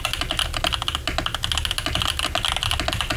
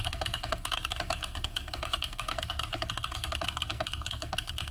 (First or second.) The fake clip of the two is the second